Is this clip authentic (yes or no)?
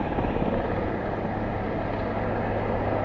yes